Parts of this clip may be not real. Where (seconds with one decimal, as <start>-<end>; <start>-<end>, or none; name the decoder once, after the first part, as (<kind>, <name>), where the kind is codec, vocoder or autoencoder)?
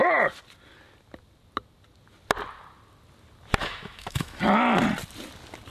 3.6-4.4 (autoencoder, DAC-VAE)